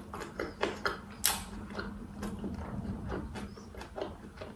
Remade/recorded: recorded